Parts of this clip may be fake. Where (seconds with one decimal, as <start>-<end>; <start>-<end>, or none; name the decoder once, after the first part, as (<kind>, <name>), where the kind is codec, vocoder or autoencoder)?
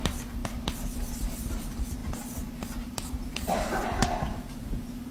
2.0-4.4 (vocoder, BigVGAN v2)